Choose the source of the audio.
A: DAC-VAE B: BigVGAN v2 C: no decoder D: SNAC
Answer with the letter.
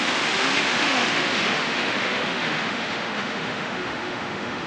A